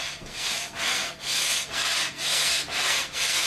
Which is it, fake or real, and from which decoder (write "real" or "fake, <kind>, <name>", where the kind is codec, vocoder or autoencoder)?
fake, codec, SNAC